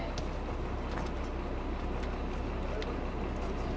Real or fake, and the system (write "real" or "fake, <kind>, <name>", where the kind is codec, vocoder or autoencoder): real